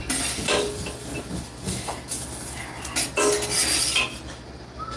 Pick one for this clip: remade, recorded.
recorded